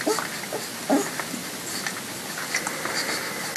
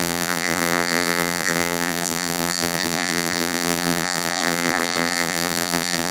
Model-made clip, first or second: second